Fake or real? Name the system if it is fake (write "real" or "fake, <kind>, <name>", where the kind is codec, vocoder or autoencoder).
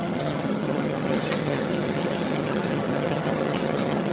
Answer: fake, vocoder, HiFi-GAN